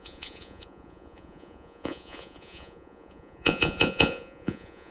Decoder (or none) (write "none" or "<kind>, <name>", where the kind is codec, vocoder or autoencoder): vocoder, Vocos